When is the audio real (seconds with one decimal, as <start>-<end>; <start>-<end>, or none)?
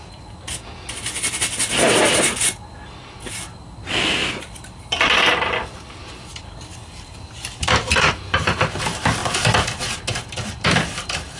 0.0-4.2; 8.1-11.4